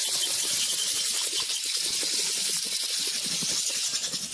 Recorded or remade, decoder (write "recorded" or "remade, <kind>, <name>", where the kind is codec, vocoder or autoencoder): recorded